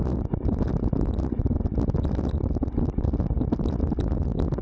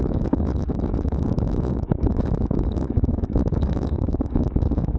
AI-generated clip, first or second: second